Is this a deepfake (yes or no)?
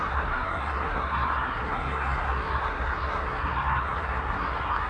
yes